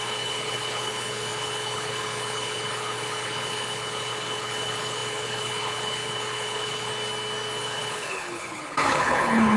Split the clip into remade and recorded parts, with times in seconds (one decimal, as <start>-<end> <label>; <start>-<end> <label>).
0.0-6.9 remade; 6.9-7.6 recorded; 7.6-9.6 remade